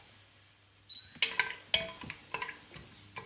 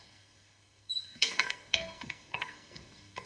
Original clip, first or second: first